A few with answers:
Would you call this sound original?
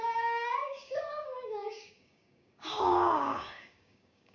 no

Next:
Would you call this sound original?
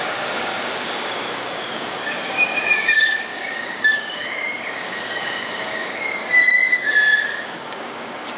no